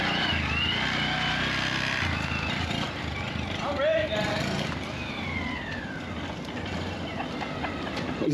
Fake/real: real